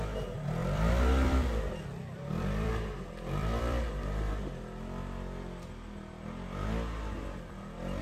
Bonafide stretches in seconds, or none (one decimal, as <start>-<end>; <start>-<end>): 0.0-0.6; 2.7-3.4; 4.3-8.0

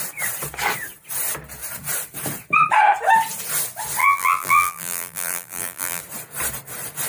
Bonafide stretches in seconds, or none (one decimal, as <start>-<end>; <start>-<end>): 0.0-4.0; 6.0-7.1

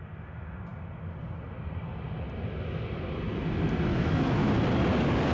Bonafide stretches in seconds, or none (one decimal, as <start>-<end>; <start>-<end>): 0.0-3.9; 4.5-5.3

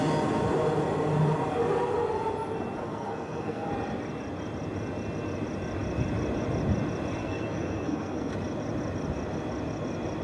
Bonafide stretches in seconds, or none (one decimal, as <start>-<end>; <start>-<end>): 0.0-2.8; 3.7-7.2; 8.3-10.2

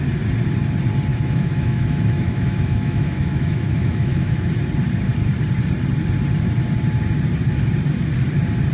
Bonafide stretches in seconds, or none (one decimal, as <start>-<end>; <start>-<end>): 0.0-1.1; 4.5-8.7

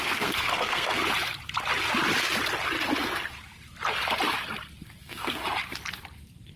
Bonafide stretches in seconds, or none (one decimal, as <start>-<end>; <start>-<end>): 1.0-5.0; 5.4-6.6